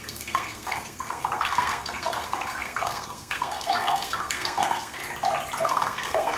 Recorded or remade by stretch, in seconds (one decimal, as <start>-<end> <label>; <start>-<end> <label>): 0.0-5.0 remade; 5.0-5.6 recorded; 5.6-6.4 remade